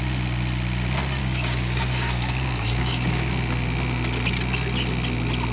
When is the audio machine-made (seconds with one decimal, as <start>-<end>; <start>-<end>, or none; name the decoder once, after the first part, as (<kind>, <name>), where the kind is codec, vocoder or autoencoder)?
1.2-3.3 (codec, DAC)